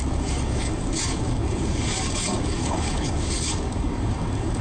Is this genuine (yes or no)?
no